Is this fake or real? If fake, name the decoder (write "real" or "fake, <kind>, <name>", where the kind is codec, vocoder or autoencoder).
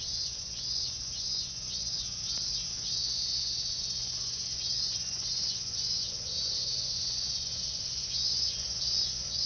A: fake, vocoder, Vocos